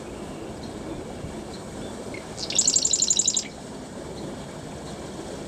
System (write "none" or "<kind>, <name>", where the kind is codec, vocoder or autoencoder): none